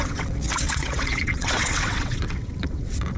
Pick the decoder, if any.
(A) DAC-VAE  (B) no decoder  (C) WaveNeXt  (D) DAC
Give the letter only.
C